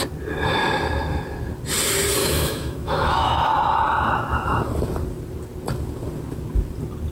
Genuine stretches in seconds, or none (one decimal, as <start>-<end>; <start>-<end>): 0.0-2.2; 3.5-7.1